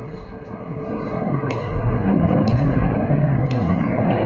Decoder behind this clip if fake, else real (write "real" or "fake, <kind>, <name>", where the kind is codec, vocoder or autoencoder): fake, codec, SNAC